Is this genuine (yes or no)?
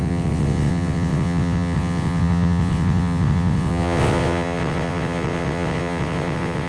no